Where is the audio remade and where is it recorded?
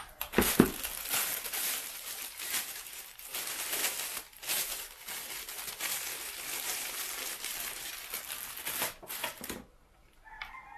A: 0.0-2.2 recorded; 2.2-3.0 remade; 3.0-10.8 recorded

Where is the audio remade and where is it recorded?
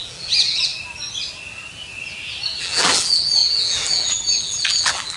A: 0.0-0.7 remade; 0.7-2.6 recorded; 2.6-5.2 remade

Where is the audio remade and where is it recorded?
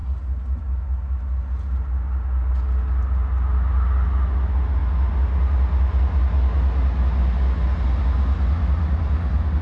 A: 0.0-9.6 recorded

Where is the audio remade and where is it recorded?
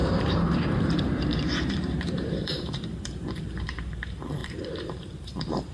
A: 0.0-5.7 remade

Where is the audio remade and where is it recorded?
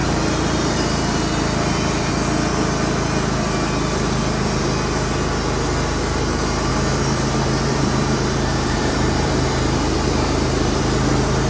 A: 0.0-2.1 remade; 2.1-6.7 recorded; 6.7-10.8 remade; 10.8-11.5 recorded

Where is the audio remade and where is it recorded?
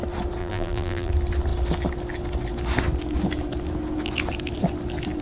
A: 0.0-0.4 recorded; 0.4-1.1 remade; 1.1-5.2 recorded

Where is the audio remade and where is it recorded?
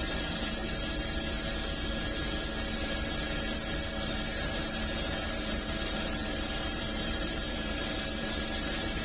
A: 0.0-0.6 remade; 0.6-4.0 recorded; 4.0-9.0 remade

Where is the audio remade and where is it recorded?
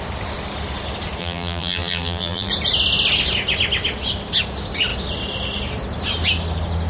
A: 0.0-1.2 recorded; 1.2-2.5 remade; 2.5-6.9 recorded